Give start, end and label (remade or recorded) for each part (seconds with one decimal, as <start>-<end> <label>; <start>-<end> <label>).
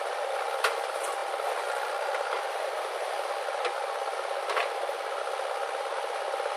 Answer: 0.0-6.6 remade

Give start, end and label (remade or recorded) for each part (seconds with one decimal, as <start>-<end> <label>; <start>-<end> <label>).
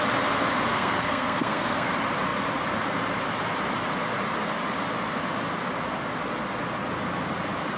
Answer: 0.0-0.7 recorded; 0.7-1.9 remade; 1.9-7.8 recorded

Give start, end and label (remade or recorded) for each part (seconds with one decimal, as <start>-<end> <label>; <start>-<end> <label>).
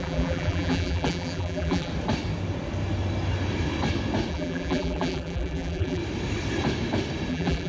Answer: 0.0-1.9 remade; 1.9-4.3 recorded; 4.3-6.0 remade; 6.0-7.3 recorded; 7.3-7.7 remade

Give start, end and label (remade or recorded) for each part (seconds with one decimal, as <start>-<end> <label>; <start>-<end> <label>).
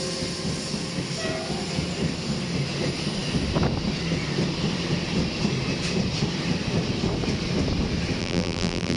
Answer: 0.0-8.2 recorded; 8.2-9.0 remade